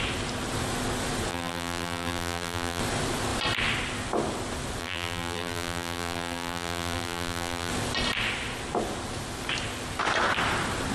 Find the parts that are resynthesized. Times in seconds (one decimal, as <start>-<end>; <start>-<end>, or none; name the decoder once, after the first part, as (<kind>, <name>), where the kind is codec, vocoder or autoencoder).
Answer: 1.3-2.8 (vocoder, BigVGAN v2); 4.8-7.7